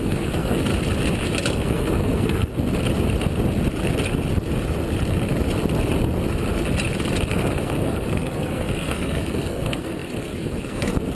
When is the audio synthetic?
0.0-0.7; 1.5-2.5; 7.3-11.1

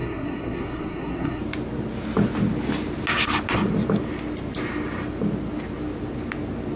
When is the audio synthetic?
0.0-1.4

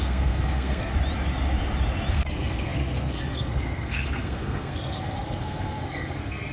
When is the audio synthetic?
0.0-0.9; 2.1-6.5

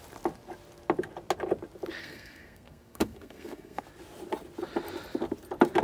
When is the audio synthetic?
2.0-3.8

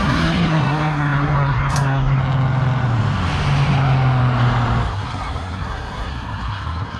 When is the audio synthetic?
0.0-2.2; 4.9-7.0

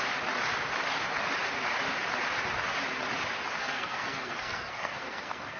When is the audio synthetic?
3.6-5.6

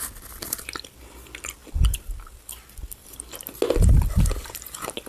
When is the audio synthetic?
none